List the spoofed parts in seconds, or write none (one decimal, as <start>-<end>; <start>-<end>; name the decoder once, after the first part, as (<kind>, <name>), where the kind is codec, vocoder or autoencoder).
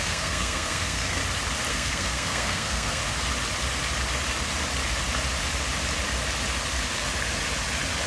0.0-1.2 (codec, SNAC); 1.7-3.0